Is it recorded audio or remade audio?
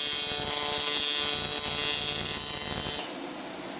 recorded